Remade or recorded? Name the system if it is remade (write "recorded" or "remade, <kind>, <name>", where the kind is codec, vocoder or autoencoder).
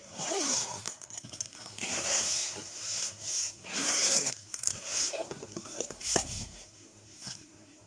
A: remade, codec, SNAC